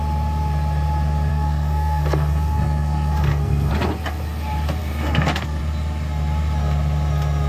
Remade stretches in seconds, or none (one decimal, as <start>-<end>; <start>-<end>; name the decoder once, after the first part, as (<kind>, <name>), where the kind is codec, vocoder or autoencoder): 1.3-3.7 (codec, SNAC); 4.8-5.6